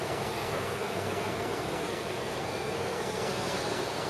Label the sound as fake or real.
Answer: fake